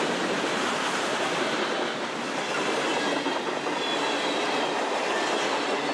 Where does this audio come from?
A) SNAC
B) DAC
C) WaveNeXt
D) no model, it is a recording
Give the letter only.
D